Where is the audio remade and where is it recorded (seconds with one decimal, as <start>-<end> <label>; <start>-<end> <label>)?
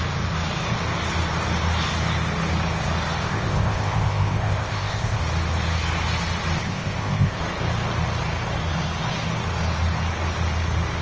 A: 0.0-3.2 recorded; 3.2-5.2 remade; 5.2-6.6 recorded; 6.6-7.4 remade; 7.4-11.0 recorded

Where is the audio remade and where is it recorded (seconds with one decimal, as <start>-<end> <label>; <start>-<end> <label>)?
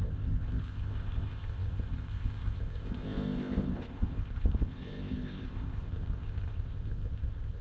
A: 0.0-7.6 remade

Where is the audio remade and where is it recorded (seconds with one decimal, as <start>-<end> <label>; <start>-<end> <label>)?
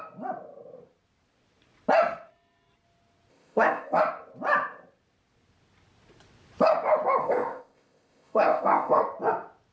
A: 0.0-3.3 recorded; 3.3-4.0 remade; 4.0-7.2 recorded; 7.2-9.0 remade; 9.0-9.7 recorded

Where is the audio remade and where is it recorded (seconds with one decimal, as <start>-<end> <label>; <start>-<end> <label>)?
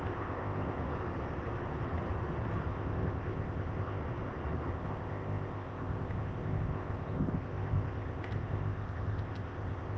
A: 0.0-0.8 remade; 0.8-2.7 recorded; 2.7-4.0 remade; 4.0-4.7 recorded; 4.7-10.0 remade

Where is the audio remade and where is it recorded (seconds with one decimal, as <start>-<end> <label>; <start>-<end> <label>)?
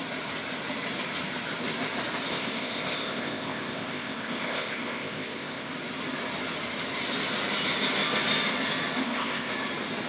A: 0.0-2.3 recorded; 2.3-5.7 remade; 5.7-9.0 recorded; 9.0-9.5 remade; 9.5-10.1 recorded